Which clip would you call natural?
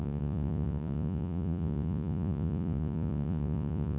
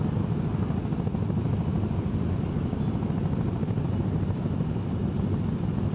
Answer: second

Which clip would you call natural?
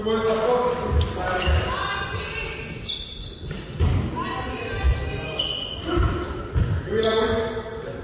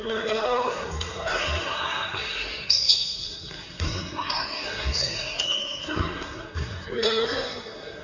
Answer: first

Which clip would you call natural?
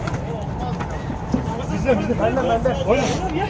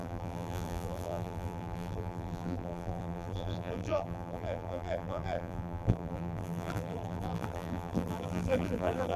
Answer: first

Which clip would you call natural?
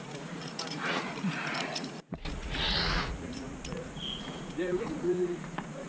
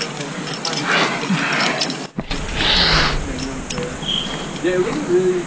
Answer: second